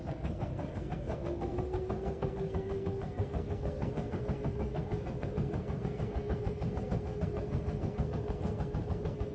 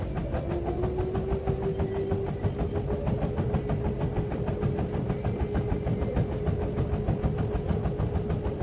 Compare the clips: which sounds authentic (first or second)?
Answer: second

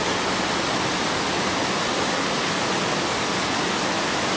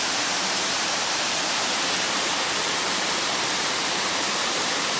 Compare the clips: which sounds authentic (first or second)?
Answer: first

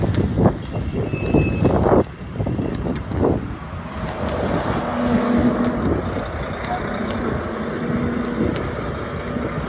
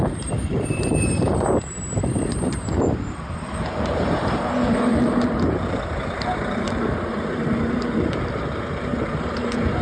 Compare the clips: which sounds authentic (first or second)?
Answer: first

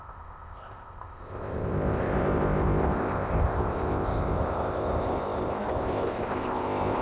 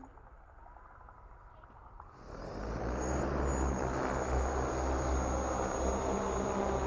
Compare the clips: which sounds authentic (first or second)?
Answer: second